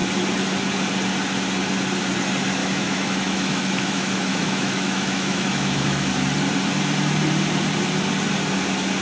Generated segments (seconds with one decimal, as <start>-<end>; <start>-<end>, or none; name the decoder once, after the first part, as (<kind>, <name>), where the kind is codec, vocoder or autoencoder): 2.6-6.1 (autoencoder, DAC-VAE)